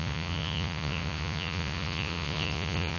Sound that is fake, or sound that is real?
fake